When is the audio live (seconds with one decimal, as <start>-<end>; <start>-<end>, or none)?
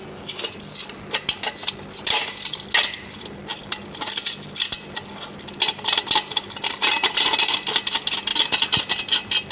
0.0-9.5